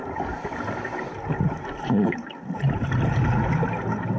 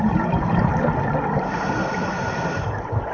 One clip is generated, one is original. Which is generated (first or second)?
second